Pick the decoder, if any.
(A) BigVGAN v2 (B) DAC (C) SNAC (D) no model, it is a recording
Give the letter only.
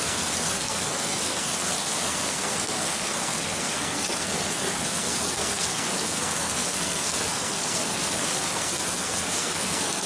C